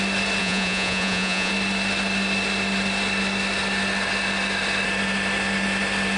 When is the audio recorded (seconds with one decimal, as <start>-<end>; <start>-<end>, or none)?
0.0-0.4; 1.5-6.2